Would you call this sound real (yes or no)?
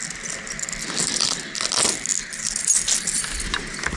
yes